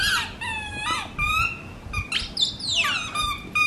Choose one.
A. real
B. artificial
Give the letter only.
A